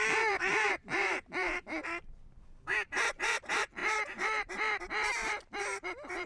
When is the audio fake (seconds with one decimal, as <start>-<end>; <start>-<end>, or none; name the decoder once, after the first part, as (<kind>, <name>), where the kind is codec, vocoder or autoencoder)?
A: 0.0-6.3 (vocoder, BigVGAN v2)